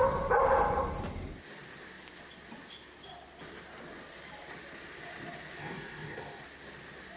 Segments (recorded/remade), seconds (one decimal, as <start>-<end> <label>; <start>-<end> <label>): 0.0-5.6 recorded; 5.6-6.4 remade; 6.4-7.2 recorded